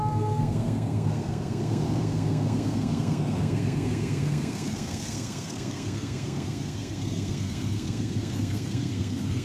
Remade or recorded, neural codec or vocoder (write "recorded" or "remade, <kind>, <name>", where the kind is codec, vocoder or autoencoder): remade, codec, SNAC